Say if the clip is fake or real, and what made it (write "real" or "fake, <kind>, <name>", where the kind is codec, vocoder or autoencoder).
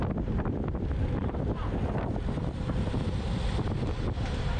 fake, vocoder, BigVGAN v2